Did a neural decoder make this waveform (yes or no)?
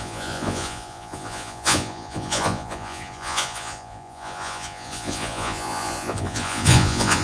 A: yes